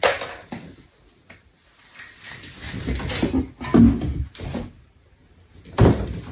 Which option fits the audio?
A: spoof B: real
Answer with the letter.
B